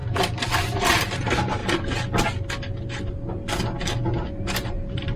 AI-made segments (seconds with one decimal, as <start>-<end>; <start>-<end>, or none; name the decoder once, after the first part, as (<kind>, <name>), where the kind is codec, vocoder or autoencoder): 0.0-1.6 (vocoder, BigVGAN v2); 4.7-5.2